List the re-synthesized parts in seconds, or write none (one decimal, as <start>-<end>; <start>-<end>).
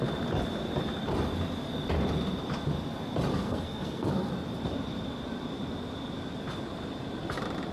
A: 3.3-4.3